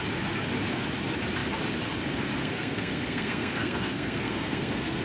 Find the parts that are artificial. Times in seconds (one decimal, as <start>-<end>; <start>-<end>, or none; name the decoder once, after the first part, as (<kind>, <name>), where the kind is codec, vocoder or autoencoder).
2.4-5.0 (codec, SNAC)